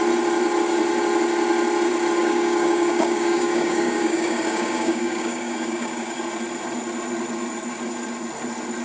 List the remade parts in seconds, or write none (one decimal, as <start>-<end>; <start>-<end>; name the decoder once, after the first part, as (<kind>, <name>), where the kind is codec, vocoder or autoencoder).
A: 2.2-6.2 (codec, DAC)